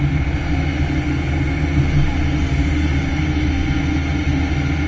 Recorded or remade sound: recorded